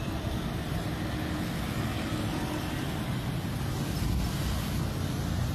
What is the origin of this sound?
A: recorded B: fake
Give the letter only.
A